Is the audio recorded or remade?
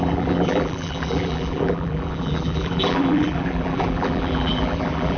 remade